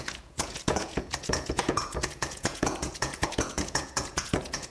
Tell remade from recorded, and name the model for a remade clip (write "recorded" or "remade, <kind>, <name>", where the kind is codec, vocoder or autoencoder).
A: remade, vocoder, Vocos